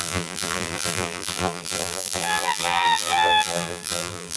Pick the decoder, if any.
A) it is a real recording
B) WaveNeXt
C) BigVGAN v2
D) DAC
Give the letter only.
C